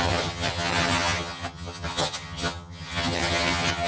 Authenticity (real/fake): fake